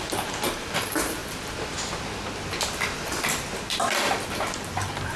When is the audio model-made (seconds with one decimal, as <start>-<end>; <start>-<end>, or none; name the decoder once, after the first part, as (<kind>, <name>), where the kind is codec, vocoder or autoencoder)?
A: 0.0-1.2 (vocoder, BigVGAN v2); 4.3-5.2